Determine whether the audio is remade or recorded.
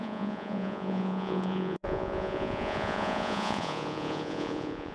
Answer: remade